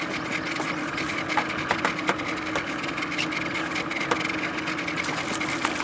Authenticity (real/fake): real